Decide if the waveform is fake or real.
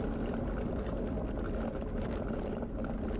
real